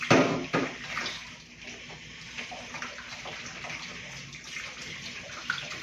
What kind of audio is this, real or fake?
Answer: fake